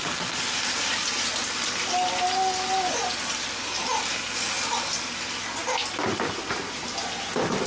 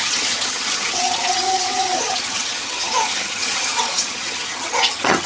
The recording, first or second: first